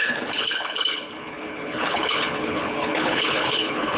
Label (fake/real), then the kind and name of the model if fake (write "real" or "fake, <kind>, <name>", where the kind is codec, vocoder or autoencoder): fake, codec, HILCodec